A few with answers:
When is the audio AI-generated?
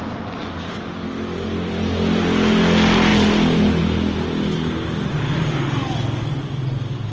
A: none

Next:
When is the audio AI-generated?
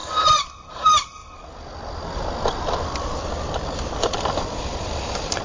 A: none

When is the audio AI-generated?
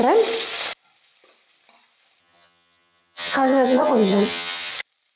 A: 2.2-4.7 (vocoder, HiFi-GAN)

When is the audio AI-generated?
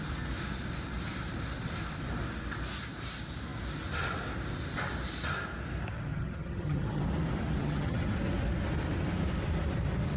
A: 6.1-7.0 (vocoder, HiFi-GAN); 7.6-8.1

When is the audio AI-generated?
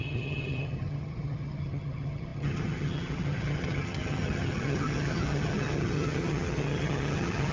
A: 0.0-7.5 (vocoder, HiFi-GAN)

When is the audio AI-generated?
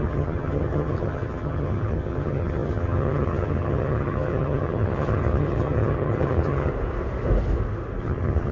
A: 0.0-6.7 (vocoder, HiFi-GAN); 8.0-8.5